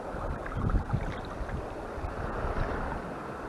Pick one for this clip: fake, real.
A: real